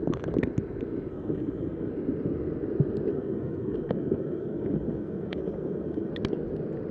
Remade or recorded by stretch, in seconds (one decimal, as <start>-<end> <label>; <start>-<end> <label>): 0.0-1.1 recorded; 1.1-1.9 remade; 1.9-3.1 recorded; 3.1-6.1 remade; 6.1-6.9 recorded